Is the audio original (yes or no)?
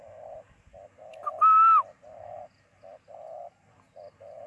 yes